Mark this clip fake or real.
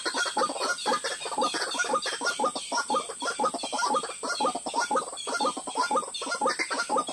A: real